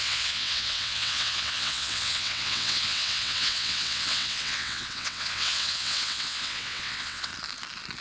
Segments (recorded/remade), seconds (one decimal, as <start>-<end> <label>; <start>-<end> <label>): 0.0-7.3 remade; 7.3-8.0 recorded

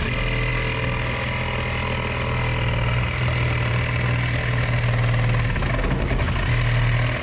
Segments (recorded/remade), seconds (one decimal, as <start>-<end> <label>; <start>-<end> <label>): 0.0-7.2 recorded

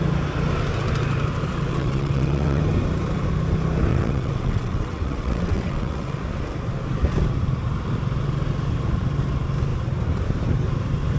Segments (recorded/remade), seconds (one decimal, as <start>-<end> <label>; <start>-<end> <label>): 0.0-1.7 recorded; 1.7-2.6 remade; 2.6-3.9 recorded; 3.9-6.2 remade; 6.2-11.2 recorded